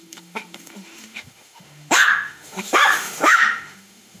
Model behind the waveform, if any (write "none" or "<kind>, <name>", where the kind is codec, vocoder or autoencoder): autoencoder, DAC-VAE